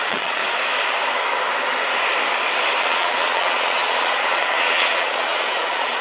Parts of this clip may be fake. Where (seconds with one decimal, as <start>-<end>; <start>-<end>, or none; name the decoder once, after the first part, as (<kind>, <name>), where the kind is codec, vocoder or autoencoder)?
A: 0.0-0.4 (vocoder, Vocos); 2.8-6.0

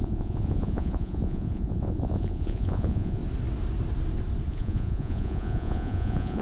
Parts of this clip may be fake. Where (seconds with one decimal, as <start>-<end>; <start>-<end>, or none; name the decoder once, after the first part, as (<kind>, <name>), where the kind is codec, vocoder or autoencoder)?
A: 0.0-3.2 (vocoder, Vocos); 4.5-6.4

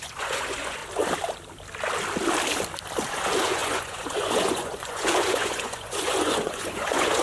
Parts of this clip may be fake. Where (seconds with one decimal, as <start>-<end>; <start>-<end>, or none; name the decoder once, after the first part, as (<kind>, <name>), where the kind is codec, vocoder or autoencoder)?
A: 0.0-0.8 (vocoder, Vocos); 3.1-7.2